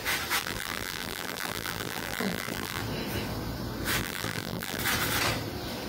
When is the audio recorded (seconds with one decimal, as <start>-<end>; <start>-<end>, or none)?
0.0-0.4; 2.8-4.0; 4.8-5.9